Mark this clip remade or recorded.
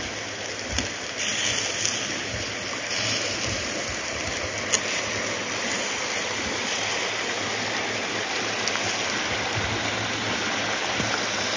recorded